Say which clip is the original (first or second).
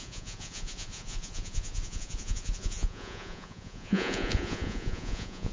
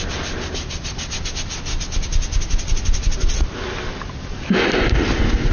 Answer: second